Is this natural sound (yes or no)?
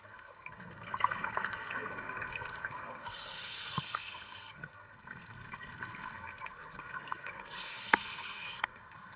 no